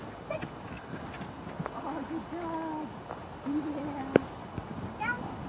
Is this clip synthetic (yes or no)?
no